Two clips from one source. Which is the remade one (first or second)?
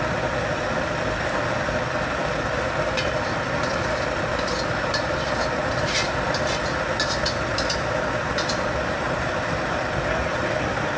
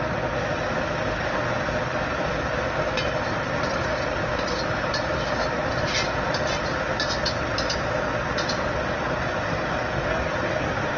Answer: first